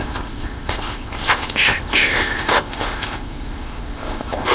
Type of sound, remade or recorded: remade